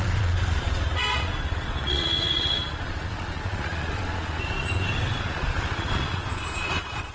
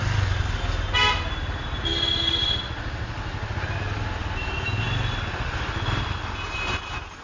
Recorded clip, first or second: second